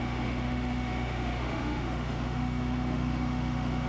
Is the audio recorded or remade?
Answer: remade